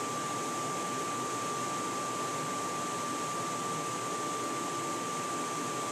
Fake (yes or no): no